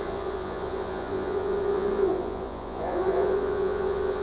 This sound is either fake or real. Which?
fake